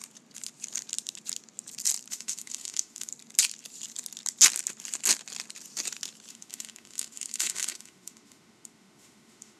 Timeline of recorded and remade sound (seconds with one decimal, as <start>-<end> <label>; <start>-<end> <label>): 0.0-2.1 recorded; 2.1-3.1 remade; 3.1-6.3 recorded; 6.3-9.6 remade